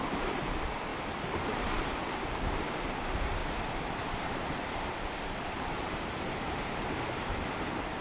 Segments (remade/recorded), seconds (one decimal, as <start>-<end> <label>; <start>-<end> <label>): 0.0-3.4 remade; 3.4-3.9 recorded; 3.9-8.0 remade